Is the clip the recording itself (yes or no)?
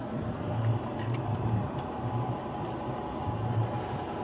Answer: no